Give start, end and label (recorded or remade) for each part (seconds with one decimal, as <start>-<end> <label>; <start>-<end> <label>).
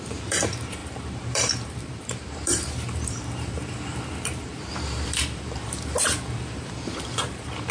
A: 0.0-7.7 remade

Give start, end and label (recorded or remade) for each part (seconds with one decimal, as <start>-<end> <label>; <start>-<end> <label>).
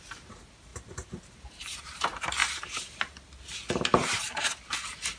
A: 0.0-2.4 remade; 2.4-3.7 recorded; 3.7-5.2 remade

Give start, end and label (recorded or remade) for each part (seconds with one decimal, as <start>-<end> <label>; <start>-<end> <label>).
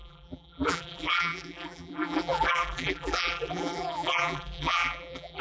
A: 0.0-5.4 remade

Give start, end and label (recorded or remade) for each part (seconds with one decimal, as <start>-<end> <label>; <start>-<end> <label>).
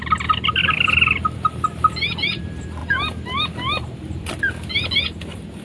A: 0.0-0.6 recorded; 0.6-2.4 remade; 2.4-2.8 recorded; 2.8-4.4 remade; 4.4-5.6 recorded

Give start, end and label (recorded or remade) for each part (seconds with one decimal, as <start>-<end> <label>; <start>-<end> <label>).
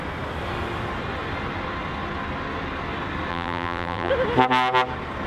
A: 0.0-3.3 recorded; 3.3-4.1 remade; 4.1-5.3 recorded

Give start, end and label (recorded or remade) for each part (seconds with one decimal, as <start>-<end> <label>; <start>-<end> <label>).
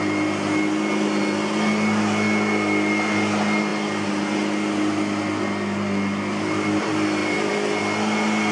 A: 0.0-7.2 recorded; 7.2-7.8 remade; 7.8-8.5 recorded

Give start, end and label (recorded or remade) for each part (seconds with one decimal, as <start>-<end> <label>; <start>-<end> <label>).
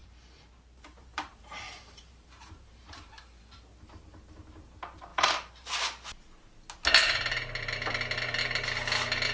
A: 0.0-3.4 remade; 3.4-5.1 recorded; 5.1-5.7 remade; 5.7-9.3 recorded